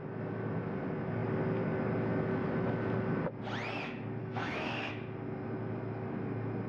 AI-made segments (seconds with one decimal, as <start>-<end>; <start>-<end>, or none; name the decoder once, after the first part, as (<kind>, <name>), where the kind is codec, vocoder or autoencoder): 4.2-4.9 (codec, SNAC)